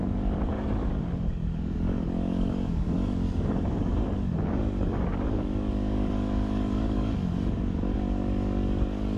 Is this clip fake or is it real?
fake